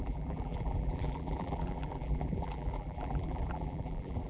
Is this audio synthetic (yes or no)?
yes